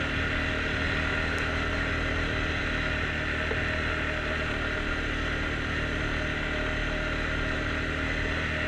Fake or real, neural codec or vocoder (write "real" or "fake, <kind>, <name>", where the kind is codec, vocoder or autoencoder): real